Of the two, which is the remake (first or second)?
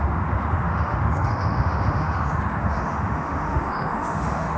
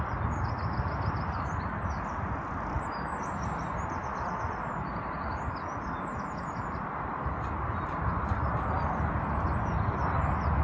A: first